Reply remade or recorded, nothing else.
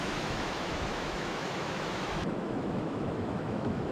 remade